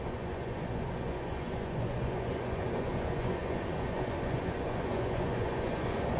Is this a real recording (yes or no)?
no